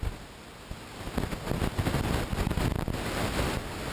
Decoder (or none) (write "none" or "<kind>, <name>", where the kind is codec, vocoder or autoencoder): none